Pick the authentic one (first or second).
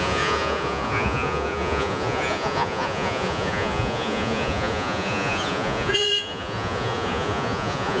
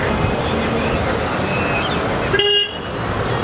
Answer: second